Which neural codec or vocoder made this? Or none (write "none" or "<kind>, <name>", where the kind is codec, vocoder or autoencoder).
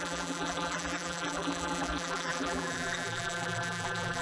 vocoder, BigVGAN v2